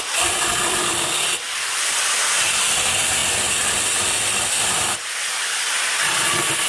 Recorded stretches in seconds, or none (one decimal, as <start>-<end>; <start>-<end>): 0.0-6.7